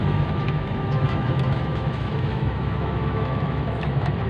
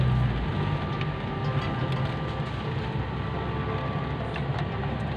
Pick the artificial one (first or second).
first